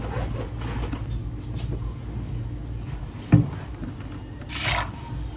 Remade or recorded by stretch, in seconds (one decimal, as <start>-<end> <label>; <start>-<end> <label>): 0.0-5.4 recorded